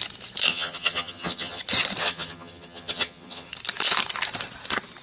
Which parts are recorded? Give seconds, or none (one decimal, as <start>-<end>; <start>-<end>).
0.0-0.5; 1.6-2.0; 3.5-5.0